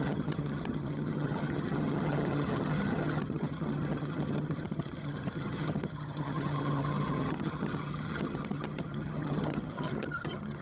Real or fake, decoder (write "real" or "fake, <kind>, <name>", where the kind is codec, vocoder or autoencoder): fake, vocoder, HiFi-GAN